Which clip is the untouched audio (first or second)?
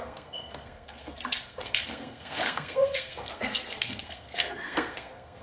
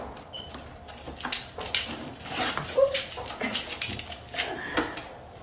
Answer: second